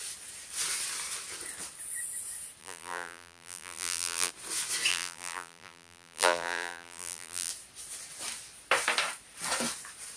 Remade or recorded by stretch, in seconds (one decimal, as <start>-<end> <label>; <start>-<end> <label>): 0.0-2.6 recorded; 2.6-4.3 remade; 4.3-4.9 recorded; 4.9-7.5 remade; 7.5-10.2 recorded